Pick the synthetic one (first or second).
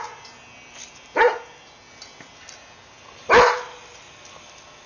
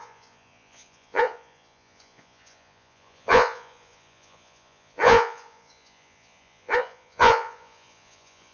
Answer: second